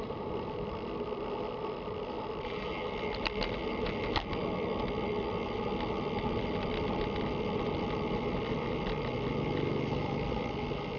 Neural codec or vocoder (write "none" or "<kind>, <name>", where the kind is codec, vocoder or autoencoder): none